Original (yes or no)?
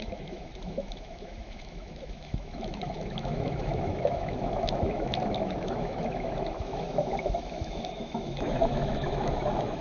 no